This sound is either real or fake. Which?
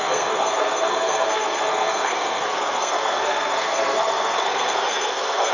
fake